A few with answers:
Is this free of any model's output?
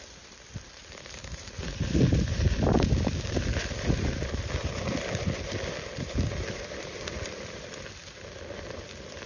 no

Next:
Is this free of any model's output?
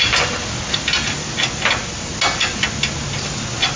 yes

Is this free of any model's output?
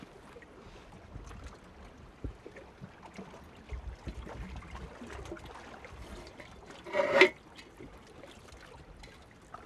yes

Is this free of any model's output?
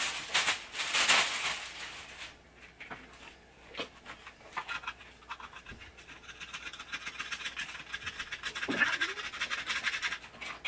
yes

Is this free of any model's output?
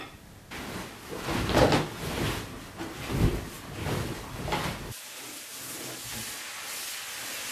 yes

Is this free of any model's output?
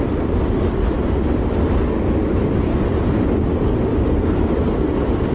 no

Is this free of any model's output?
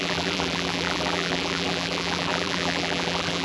no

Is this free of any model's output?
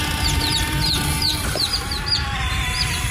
no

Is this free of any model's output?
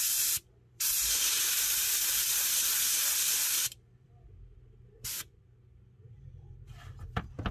no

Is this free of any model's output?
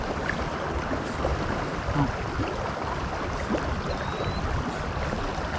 no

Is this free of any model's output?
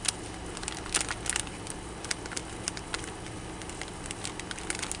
yes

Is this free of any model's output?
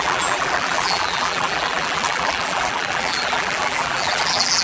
no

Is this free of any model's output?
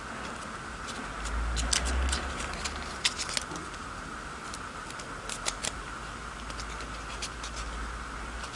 yes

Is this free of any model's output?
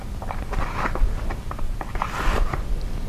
yes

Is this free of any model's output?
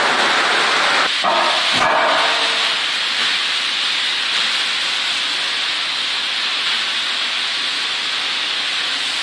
yes